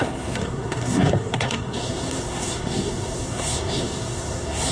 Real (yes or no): no